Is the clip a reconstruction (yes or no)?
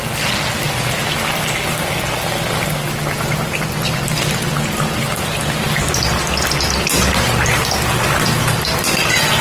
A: no